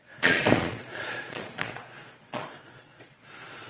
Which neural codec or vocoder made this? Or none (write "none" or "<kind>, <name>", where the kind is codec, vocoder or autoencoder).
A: vocoder, Vocos